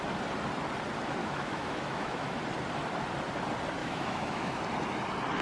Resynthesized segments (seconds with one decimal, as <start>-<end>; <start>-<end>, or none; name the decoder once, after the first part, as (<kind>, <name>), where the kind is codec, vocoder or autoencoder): 1.2-2.4 (autoencoder, DAC-VAE); 3.8-4.6